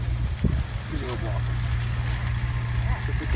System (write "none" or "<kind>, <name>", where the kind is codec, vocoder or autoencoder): none